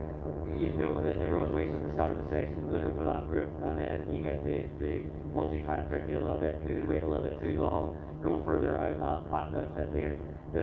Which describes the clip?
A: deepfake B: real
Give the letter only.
A